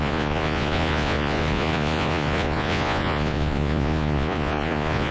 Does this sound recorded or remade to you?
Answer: remade